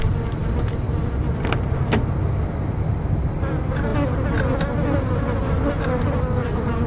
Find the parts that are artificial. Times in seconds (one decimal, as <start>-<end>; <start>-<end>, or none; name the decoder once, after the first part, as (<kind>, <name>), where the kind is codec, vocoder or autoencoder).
none

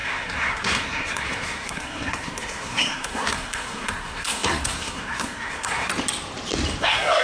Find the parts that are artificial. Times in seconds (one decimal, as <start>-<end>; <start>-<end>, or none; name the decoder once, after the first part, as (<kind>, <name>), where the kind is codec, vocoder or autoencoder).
0.0-5.9 (codec, SNAC); 6.8-7.2